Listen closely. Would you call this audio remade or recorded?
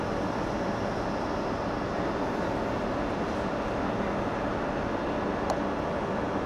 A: recorded